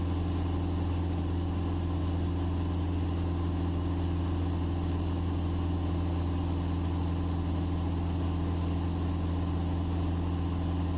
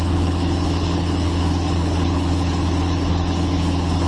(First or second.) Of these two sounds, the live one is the first